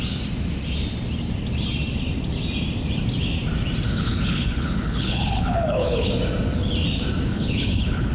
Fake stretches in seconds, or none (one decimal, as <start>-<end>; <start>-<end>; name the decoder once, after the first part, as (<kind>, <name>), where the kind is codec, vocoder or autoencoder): 3.9-6.1 (codec, HILCodec); 7.3-8.1